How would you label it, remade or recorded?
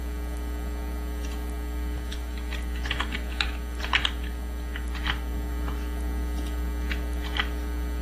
recorded